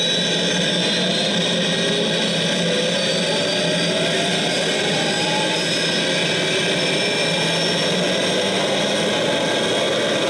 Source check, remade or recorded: recorded